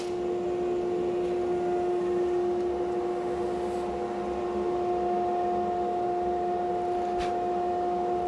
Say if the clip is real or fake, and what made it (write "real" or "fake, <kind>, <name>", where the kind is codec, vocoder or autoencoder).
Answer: real